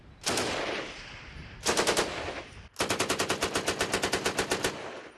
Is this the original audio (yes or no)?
yes